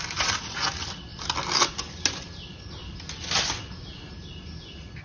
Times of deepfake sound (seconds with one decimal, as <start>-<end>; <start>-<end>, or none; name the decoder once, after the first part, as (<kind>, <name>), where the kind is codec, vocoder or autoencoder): none